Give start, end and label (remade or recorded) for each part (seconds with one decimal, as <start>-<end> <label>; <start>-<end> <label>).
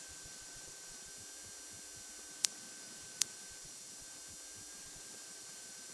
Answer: 0.0-1.1 remade; 1.1-2.3 recorded; 2.3-4.2 remade; 4.2-4.8 recorded; 4.8-5.9 remade